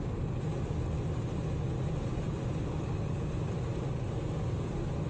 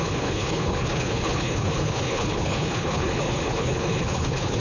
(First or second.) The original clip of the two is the first